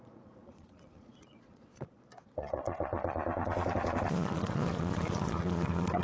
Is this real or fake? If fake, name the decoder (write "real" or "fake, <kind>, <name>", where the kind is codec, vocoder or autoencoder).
fake, vocoder, Vocos